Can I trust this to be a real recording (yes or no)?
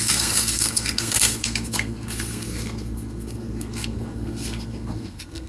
no